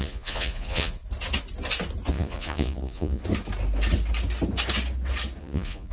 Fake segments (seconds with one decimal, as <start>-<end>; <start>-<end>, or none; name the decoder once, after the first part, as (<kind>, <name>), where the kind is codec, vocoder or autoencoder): 0.0-1.0 (vocoder, Vocos); 2.1-3.2; 5.4-5.9

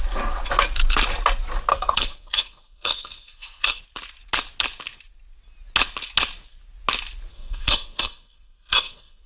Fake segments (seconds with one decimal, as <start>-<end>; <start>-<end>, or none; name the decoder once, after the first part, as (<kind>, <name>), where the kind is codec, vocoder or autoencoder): 1.7-3.8 (codec, SNAC); 7.3-9.3